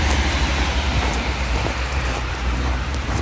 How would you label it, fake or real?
fake